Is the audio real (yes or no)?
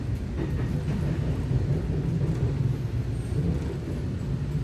yes